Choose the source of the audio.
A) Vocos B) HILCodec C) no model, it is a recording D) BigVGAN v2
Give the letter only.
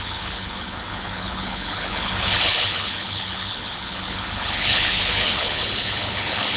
B